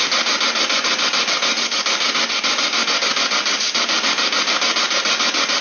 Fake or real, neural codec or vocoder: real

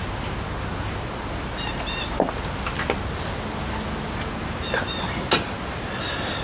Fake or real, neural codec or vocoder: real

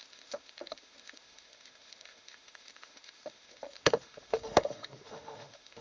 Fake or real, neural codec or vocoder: fake, autoencoder, DAC-VAE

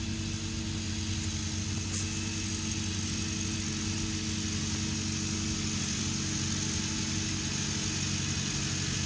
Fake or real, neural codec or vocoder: real